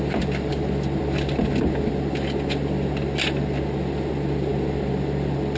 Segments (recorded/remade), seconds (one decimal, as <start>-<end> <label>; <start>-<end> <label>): 0.0-5.6 recorded

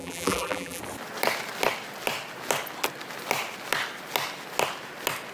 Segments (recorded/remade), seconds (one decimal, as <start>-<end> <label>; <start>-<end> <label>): 0.0-0.8 remade; 0.8-5.3 recorded

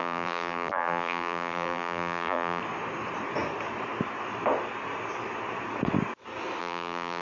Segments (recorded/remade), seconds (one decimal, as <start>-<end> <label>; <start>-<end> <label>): 0.0-2.6 remade; 2.6-6.6 recorded; 6.6-7.2 remade

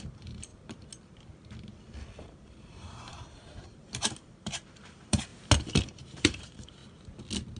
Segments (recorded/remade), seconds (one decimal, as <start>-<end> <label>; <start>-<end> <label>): 0.0-0.5 remade; 0.5-2.2 recorded; 2.2-5.3 remade; 5.3-5.8 recorded; 5.8-6.8 remade; 6.8-7.6 recorded

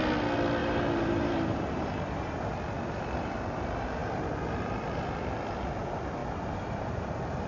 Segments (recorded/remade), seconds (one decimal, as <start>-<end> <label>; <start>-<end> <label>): 0.0-0.6 recorded; 0.6-1.8 remade; 1.8-6.2 recorded; 6.2-6.8 remade; 6.8-7.5 recorded

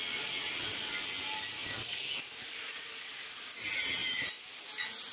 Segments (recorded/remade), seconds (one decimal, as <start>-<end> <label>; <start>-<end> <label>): 0.0-5.1 recorded

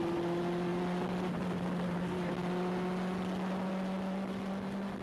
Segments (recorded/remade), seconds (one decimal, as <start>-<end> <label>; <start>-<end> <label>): 0.0-5.0 recorded

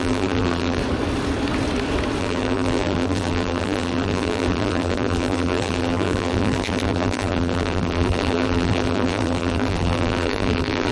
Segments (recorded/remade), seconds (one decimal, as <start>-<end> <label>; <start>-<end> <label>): 0.0-0.8 remade; 0.8-2.2 recorded; 2.2-10.9 remade